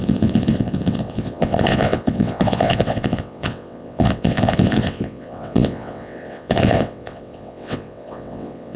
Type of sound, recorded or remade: remade